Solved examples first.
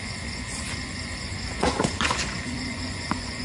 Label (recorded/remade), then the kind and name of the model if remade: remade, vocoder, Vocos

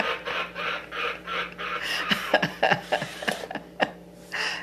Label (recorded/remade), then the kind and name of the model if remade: recorded